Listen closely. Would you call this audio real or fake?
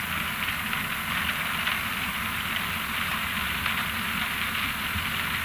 real